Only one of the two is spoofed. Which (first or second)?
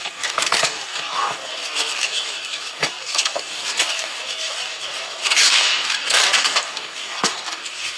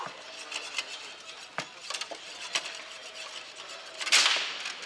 first